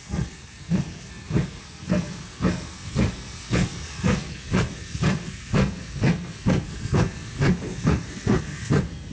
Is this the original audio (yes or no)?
no